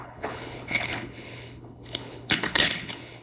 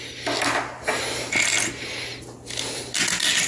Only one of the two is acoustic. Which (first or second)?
second